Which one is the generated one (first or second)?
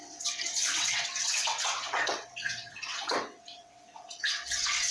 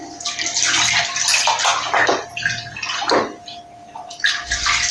first